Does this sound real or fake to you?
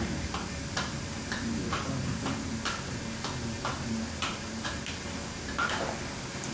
real